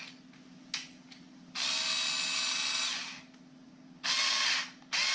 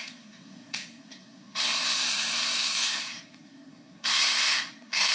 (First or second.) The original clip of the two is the first